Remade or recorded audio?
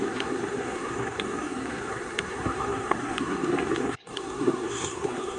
remade